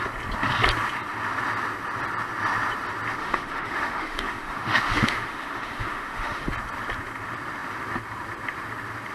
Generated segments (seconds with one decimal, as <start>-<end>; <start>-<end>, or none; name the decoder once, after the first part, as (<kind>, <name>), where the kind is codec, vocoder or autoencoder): 3.2-6.5 (autoencoder, DAC-VAE)

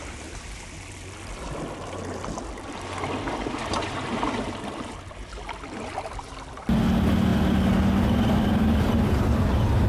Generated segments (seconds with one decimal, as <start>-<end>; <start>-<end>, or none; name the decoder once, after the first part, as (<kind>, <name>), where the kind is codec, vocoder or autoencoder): none

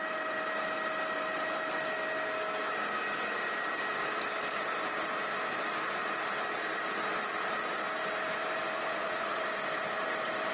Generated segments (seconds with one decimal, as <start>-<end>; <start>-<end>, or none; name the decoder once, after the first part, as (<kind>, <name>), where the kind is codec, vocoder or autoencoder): 8.9-9.4 (vocoder, Vocos)